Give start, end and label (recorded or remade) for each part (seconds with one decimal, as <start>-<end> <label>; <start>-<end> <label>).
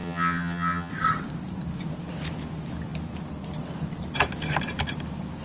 0.0-0.9 remade; 0.9-5.4 recorded